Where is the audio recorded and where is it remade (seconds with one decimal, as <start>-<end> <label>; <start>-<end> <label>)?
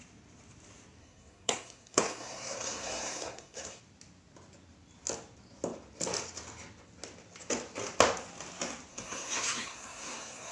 0.0-1.0 recorded; 1.0-3.8 remade; 3.8-8.9 recorded; 8.9-10.5 remade